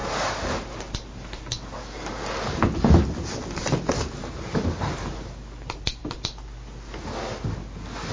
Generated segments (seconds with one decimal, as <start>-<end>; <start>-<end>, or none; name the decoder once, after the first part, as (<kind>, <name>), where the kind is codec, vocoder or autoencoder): none